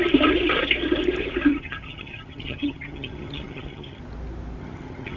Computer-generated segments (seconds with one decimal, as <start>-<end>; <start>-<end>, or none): 1.5-4.0; 4.6-5.2